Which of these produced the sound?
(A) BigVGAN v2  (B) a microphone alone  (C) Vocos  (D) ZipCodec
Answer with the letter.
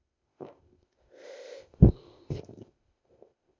D